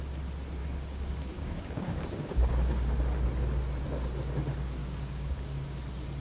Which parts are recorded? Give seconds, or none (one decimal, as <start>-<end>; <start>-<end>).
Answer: 0.0-0.6; 3.0-4.8; 5.8-6.2